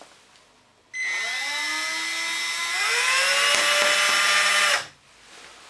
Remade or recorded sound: recorded